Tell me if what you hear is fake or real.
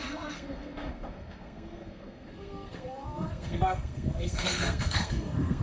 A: fake